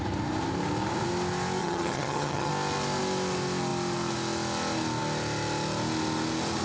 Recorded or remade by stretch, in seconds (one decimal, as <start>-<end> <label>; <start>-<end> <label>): 0.0-1.6 recorded; 1.6-2.5 remade; 2.5-6.6 recorded